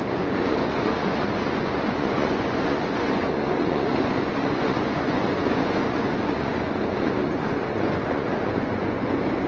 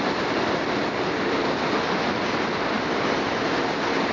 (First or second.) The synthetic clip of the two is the first